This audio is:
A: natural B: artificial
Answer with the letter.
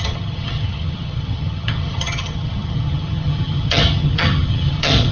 B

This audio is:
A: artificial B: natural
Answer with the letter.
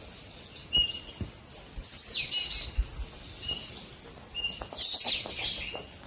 B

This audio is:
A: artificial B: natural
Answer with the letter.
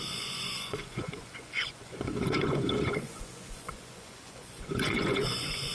A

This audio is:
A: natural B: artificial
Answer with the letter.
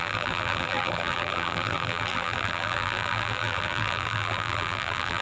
B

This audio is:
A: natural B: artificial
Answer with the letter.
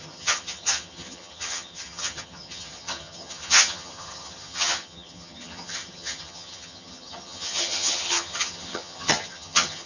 B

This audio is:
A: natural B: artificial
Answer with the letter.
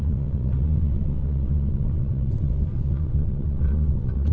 B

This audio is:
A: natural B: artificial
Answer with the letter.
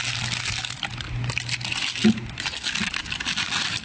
A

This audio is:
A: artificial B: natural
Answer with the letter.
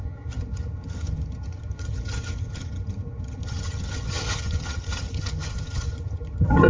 A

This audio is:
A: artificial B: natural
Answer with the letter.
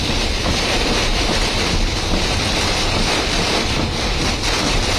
A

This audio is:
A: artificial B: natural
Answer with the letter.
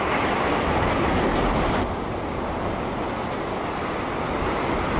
B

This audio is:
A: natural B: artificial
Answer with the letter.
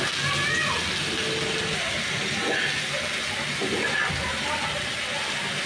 A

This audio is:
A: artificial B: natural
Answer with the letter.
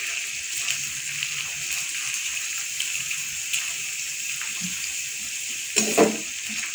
B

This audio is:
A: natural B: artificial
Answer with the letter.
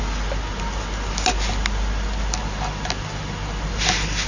A